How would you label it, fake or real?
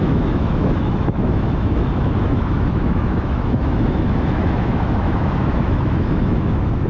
fake